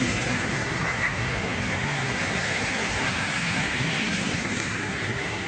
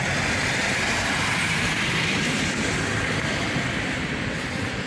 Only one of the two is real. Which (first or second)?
second